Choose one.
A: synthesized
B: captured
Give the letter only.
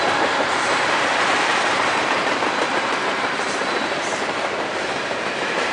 A